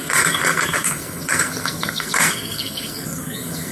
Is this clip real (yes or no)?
no